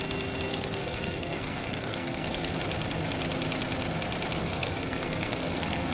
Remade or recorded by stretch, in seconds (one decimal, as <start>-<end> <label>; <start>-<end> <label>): 0.0-0.5 recorded; 0.5-2.5 remade; 2.5-4.4 recorded; 4.4-5.9 remade